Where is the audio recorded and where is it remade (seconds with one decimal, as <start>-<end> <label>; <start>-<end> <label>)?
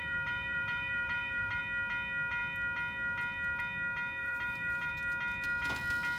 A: 0.0-1.6 remade; 1.6-4.2 recorded; 4.2-4.9 remade; 4.9-6.2 recorded